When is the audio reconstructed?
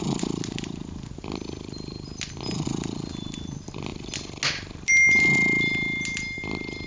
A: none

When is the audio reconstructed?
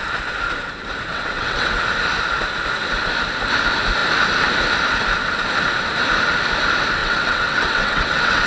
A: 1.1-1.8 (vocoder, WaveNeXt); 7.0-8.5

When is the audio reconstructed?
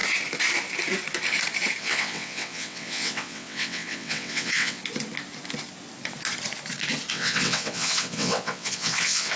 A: 1.8-4.8 (vocoder, WaveNeXt); 7.1-9.4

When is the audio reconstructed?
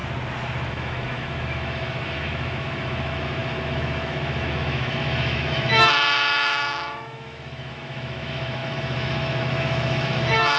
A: 0.7-10.6 (autoencoder, DAC-VAE)